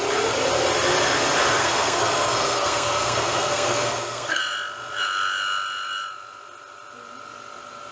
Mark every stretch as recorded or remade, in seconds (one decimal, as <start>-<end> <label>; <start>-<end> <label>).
0.0-1.6 recorded; 1.6-4.4 remade; 4.4-7.9 recorded